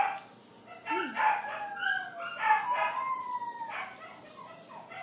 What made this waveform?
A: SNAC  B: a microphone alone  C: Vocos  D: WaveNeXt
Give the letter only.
B